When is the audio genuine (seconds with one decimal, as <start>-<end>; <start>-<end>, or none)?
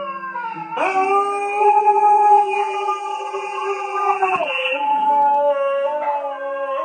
0.0-1.6; 5.1-6.8